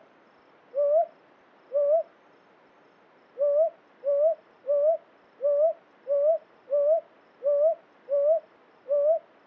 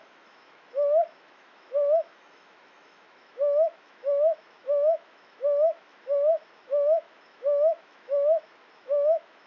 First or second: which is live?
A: first